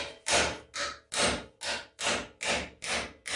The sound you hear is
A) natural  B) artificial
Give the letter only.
A